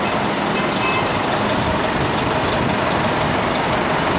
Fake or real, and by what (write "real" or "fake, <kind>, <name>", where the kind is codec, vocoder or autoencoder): real